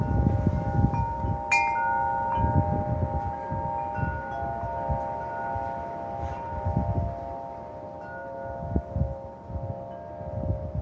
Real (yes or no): yes